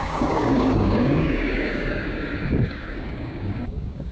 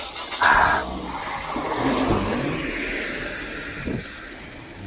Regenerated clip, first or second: first